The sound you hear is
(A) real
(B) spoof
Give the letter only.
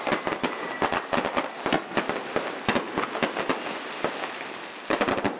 A